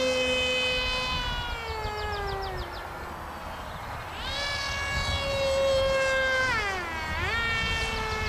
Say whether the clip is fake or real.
real